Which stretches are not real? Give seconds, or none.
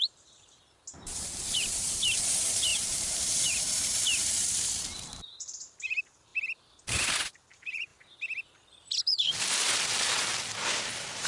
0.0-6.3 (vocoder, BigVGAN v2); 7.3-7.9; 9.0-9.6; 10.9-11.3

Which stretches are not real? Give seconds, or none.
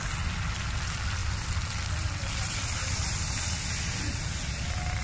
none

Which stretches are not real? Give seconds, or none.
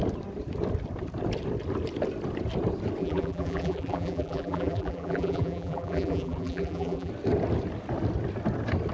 3.0-7.1 (vocoder, BigVGAN v2)